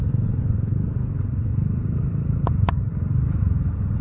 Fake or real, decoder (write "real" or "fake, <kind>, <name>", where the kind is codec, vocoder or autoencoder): real